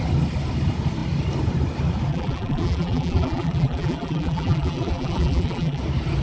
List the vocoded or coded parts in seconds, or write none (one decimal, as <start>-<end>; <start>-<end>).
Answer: 2.1-5.8